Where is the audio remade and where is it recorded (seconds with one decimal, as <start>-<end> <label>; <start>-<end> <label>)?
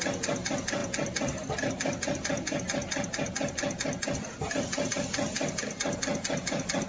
0.0-6.9 recorded